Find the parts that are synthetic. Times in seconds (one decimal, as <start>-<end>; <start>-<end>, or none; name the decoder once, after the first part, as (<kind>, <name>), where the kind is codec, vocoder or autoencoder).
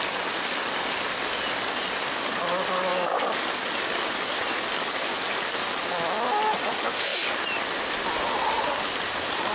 none